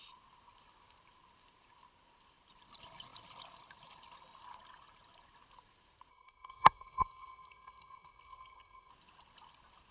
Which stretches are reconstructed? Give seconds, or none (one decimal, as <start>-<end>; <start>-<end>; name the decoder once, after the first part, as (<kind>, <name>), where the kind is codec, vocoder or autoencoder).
6.1-8.9 (codec, SNAC)